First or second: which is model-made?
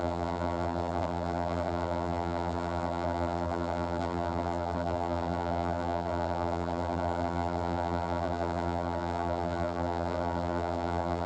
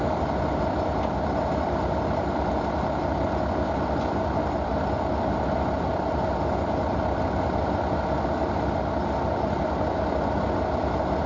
first